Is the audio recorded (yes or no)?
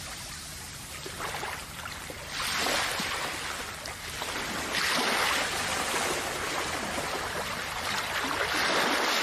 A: yes